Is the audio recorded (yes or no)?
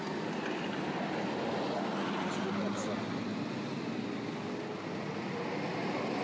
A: yes